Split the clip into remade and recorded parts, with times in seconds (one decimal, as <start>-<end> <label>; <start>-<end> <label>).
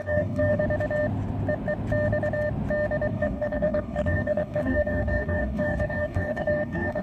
0.0-0.6 remade; 0.6-3.1 recorded; 3.1-7.0 remade